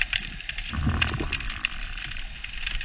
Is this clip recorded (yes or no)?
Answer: yes